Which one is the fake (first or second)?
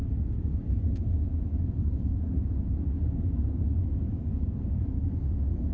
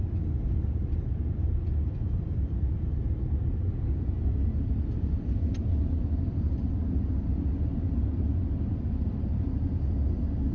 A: first